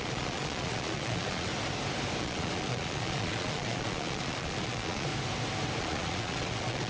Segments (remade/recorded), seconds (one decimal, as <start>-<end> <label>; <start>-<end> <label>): 0.0-1.5 remade; 1.5-2.2 recorded; 2.2-5.1 remade; 5.1-5.8 recorded; 5.8-6.9 remade